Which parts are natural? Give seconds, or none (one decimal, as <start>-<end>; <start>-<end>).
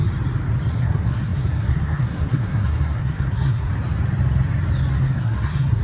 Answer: 0.0-0.7; 3.7-4.9